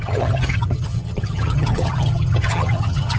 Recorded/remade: remade